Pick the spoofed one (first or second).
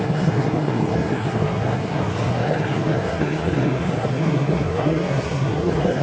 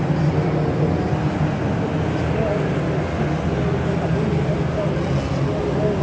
first